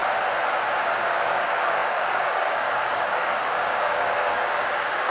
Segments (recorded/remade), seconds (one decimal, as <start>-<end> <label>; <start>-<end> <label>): 0.0-1.1 recorded; 1.1-5.1 remade

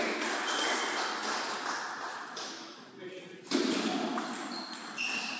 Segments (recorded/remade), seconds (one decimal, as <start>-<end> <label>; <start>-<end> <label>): 0.0-2.1 recorded; 2.1-2.9 remade; 2.9-5.4 recorded

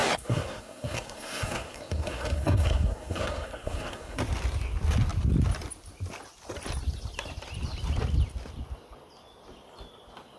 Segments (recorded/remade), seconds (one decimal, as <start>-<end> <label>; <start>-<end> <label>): 0.0-4.2 remade; 4.2-10.4 recorded

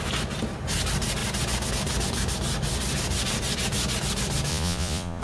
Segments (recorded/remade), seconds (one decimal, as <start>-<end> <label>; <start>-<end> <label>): 0.0-4.5 recorded; 4.5-5.2 remade